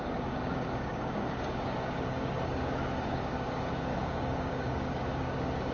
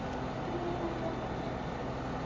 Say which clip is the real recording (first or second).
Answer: second